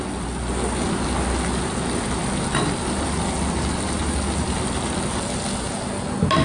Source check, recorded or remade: recorded